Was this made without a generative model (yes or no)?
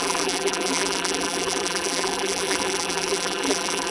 no